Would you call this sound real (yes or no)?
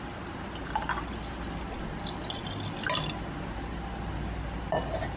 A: yes